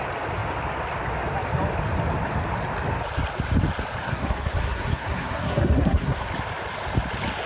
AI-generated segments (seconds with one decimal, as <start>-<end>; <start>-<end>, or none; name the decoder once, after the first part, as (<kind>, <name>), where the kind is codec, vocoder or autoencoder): 4.0-6.3 (codec, SNAC)